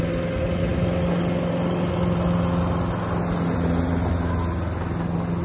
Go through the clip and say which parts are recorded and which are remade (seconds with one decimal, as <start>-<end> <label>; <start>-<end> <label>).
0.0-5.4 recorded